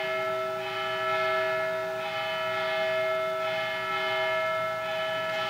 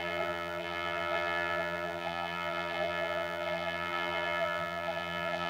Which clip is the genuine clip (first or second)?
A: first